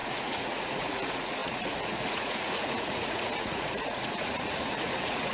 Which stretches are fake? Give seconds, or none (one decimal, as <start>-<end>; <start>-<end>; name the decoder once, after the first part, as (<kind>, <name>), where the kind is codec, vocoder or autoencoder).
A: 0.0-5.3 (vocoder, Vocos)